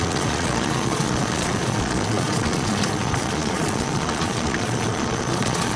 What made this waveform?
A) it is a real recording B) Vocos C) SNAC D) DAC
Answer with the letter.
B